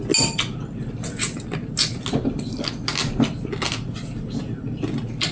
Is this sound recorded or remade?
recorded